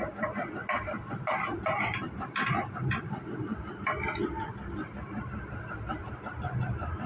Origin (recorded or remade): recorded